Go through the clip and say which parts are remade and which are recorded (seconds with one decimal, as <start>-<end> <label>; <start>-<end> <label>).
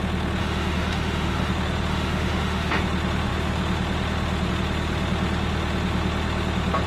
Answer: 0.0-0.4 recorded; 0.4-1.5 remade; 1.5-1.9 recorded; 1.9-2.8 remade; 2.8-6.9 recorded